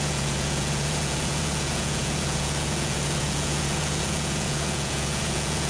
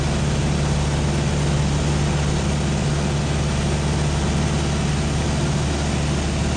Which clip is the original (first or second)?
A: second